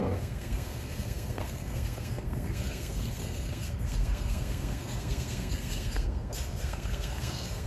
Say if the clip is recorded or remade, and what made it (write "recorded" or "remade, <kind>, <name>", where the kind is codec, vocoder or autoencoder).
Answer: remade, codec, SNAC